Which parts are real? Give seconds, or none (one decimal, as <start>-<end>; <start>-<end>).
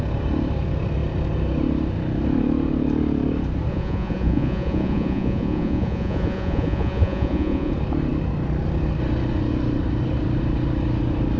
0.0-3.7; 7.7-11.4